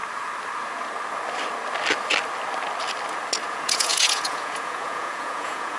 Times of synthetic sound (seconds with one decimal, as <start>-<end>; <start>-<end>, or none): 3.5-5.8